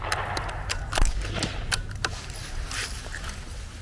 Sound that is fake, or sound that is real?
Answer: real